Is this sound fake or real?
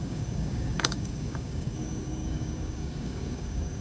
fake